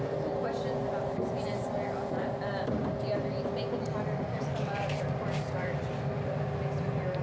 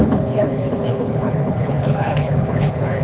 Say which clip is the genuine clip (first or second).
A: first